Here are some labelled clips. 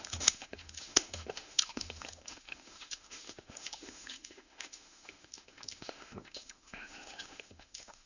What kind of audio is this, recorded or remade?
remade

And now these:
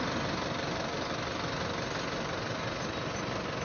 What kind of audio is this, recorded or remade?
recorded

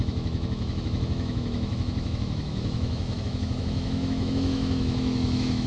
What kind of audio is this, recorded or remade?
remade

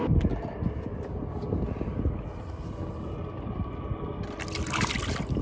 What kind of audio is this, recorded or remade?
recorded